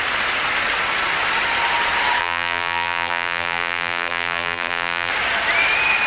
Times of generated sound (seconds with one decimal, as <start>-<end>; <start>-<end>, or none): 2.2-5.1